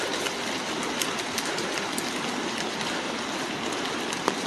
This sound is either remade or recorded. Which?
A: recorded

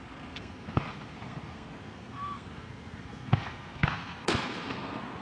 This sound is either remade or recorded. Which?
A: remade